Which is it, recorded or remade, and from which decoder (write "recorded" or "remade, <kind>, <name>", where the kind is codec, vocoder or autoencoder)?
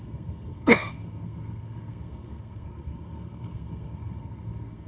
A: remade, codec, SNAC